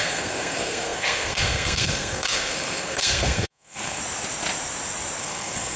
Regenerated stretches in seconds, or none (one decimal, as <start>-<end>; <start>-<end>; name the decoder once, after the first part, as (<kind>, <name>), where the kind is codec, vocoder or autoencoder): 0.0-4.0 (codec, SNAC); 5.2-5.8